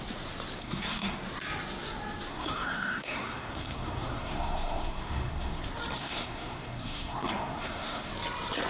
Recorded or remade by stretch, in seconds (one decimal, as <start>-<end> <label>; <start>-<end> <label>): 0.0-0.6 recorded; 0.6-1.2 remade; 1.2-2.3 recorded; 2.3-5.6 remade; 5.6-6.0 recorded; 6.0-8.1 remade; 8.1-8.7 recorded